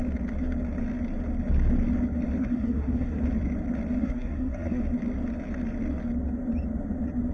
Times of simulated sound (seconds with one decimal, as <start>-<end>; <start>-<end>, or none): 2.4-3.2; 4.0-4.8